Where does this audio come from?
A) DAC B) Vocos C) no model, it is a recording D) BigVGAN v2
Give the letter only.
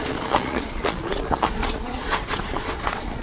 B